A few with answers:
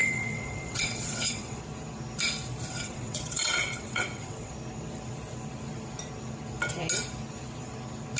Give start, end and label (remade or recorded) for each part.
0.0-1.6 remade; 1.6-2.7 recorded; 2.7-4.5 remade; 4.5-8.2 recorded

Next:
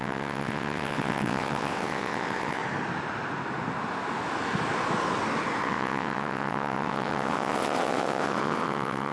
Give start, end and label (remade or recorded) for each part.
0.0-2.6 remade; 2.6-5.6 recorded; 5.6-9.1 remade

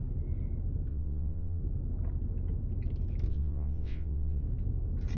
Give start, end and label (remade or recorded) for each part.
0.0-0.9 recorded; 0.9-1.6 remade; 1.6-3.3 recorded; 3.3-4.4 remade; 4.4-5.2 recorded

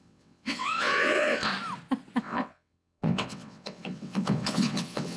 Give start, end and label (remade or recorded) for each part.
0.0-1.5 remade; 1.5-2.2 recorded; 2.2-5.2 remade

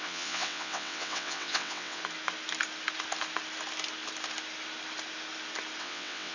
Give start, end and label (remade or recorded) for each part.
0.0-2.0 remade; 2.0-5.8 recorded; 5.8-6.3 remade

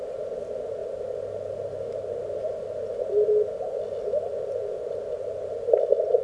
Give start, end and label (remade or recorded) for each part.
0.0-6.2 recorded

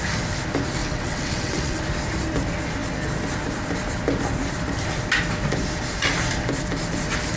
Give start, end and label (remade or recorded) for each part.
0.0-0.8 recorded; 0.8-1.8 remade; 1.8-7.4 recorded